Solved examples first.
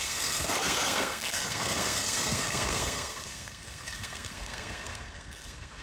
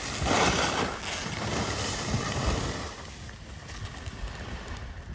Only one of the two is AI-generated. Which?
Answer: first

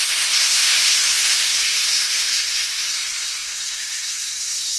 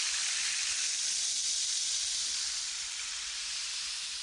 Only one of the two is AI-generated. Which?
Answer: first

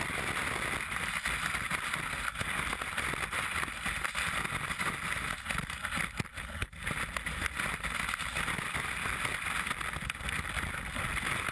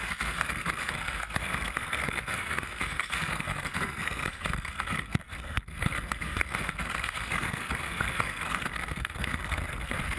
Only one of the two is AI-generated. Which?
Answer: second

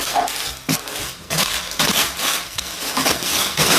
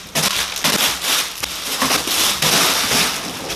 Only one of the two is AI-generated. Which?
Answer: first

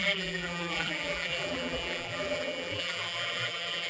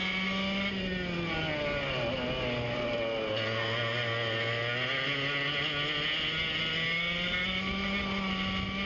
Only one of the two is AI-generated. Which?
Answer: first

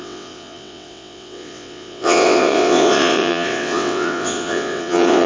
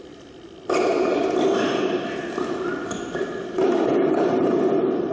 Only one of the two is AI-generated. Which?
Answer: first